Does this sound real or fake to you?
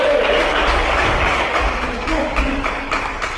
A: fake